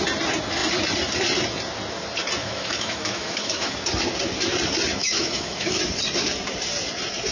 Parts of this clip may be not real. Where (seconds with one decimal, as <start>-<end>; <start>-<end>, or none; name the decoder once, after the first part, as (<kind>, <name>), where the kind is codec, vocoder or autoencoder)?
2.4-3.7 (autoencoder, DAC-VAE); 5.0-5.8